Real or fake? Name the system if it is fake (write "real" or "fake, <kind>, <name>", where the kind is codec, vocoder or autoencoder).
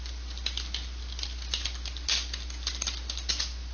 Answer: real